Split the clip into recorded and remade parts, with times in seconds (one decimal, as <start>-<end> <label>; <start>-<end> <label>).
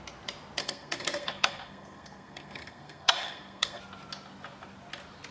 0.0-0.6 recorded; 0.6-3.8 remade; 3.8-5.3 recorded